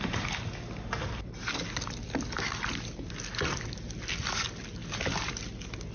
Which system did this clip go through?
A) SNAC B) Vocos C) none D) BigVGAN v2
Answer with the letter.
C